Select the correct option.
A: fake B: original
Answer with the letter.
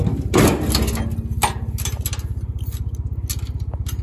B